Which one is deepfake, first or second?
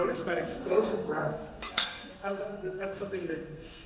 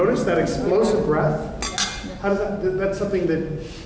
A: first